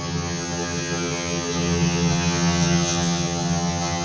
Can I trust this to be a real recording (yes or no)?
no